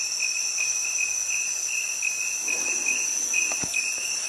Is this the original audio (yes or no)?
yes